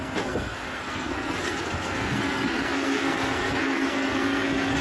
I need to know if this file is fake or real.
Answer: fake